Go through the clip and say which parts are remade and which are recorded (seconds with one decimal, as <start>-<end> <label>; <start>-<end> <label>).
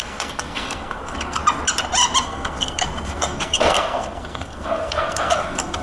0.0-1.4 remade; 1.4-2.2 recorded; 2.2-5.8 remade